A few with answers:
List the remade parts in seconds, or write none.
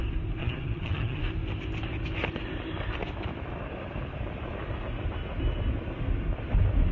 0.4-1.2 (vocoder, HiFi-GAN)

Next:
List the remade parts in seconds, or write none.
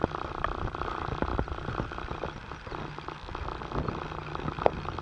none